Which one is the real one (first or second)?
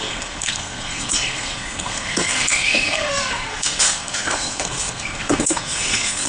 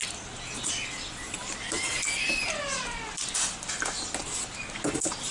second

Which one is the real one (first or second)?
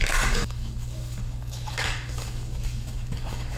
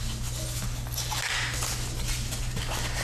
second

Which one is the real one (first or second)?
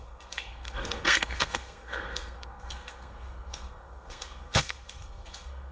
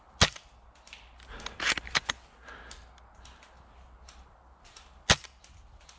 second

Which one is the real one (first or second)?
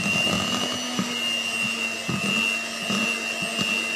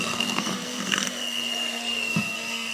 first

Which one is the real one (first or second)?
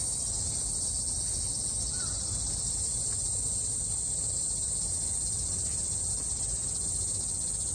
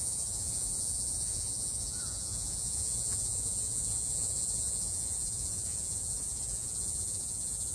first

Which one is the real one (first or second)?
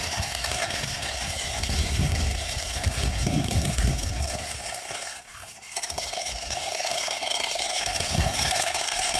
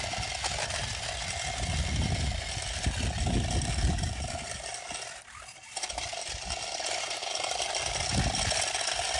second